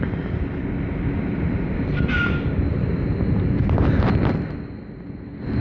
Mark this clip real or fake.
real